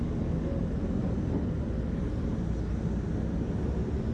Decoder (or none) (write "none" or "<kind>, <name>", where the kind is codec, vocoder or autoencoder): none